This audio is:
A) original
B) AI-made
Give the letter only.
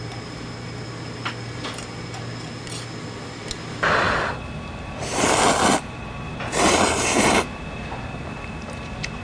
A